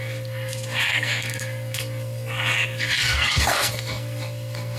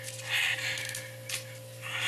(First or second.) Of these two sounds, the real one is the second